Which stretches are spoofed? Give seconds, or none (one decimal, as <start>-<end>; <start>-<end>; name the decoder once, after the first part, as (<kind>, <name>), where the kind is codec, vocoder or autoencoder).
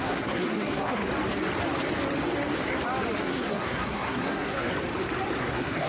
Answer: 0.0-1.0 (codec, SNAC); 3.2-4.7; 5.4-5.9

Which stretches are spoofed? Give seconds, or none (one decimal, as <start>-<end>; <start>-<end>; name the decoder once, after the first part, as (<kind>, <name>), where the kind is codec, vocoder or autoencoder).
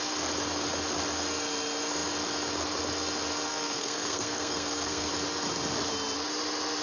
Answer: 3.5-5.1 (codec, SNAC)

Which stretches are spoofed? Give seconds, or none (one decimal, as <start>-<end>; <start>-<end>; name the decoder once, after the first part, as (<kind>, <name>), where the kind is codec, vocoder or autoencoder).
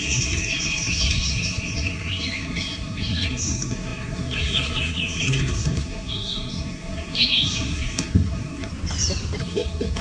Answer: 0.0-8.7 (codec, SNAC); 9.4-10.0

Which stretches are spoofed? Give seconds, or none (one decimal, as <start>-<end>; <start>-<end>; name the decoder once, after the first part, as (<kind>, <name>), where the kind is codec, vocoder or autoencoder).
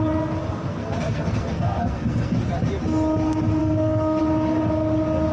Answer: 0.7-2.4 (codec, SNAC); 3.6-4.2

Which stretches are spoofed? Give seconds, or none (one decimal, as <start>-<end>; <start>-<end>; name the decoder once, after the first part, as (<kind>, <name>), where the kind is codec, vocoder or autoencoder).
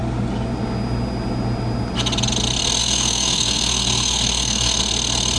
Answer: 2.8-4.8 (codec, SNAC)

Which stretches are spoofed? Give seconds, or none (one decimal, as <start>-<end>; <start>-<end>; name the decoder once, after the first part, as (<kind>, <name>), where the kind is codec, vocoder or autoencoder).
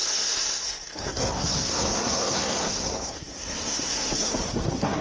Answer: 0.0-5.0 (codec, SNAC)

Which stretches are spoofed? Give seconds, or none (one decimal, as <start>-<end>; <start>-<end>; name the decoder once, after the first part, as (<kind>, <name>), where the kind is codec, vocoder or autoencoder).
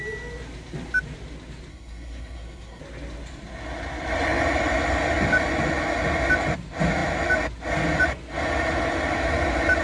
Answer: 1.7-2.8 (codec, SNAC)